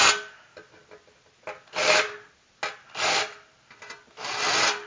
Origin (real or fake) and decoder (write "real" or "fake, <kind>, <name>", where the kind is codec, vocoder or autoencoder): real